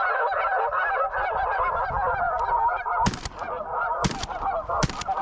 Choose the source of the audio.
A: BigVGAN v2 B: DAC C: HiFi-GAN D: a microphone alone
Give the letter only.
D